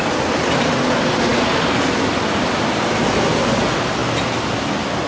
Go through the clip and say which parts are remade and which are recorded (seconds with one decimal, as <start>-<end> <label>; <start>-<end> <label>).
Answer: 0.0-5.1 recorded